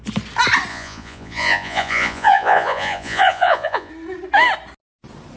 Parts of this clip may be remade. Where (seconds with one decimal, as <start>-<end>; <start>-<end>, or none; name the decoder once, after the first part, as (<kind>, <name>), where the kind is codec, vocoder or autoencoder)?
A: 0.7-3.9 (vocoder, Vocos)